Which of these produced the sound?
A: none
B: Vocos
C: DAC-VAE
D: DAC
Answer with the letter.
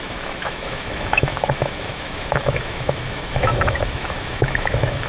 C